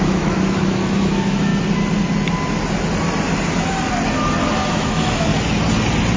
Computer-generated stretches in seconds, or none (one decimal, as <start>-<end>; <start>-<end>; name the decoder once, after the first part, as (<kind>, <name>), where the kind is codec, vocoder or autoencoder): 0.0-1.5 (autoencoder, DAC-VAE); 4.7-5.3